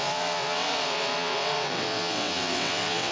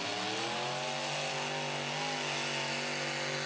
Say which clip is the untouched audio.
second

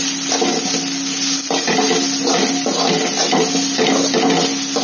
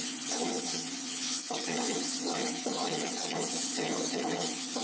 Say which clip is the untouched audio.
first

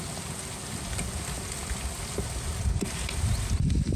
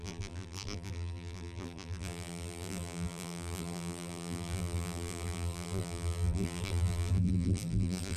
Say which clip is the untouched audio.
first